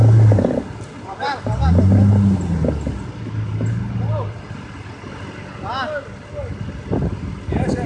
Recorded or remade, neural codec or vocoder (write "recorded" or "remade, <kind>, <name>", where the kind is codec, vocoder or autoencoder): recorded